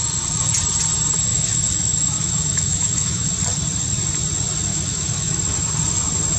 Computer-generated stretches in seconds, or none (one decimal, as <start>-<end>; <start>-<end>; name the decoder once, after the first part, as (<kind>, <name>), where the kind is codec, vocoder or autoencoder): 1.3-3.3 (autoencoder, DAC-VAE); 4.7-5.4